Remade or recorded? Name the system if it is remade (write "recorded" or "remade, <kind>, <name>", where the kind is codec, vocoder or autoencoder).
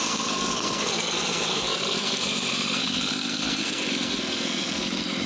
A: remade, codec, SNAC